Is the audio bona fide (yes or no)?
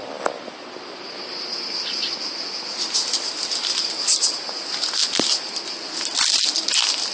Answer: yes